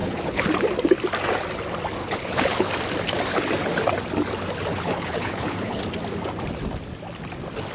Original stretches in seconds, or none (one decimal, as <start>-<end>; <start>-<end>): 0.5-2.0; 2.7-4.7; 5.8-7.7